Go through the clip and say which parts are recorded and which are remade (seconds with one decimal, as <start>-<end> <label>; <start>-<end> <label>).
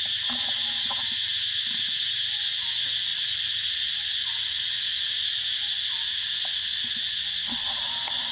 0.0-8.3 recorded